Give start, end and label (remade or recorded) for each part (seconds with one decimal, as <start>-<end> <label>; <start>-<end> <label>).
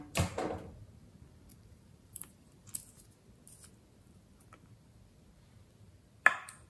0.0-1.5 recorded; 1.5-2.7 remade; 2.7-6.7 recorded